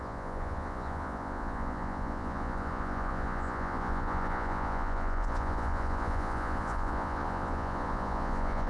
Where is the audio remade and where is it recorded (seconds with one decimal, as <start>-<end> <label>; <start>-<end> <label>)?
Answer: 0.0-8.7 remade